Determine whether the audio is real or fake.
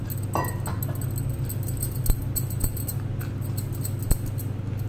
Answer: real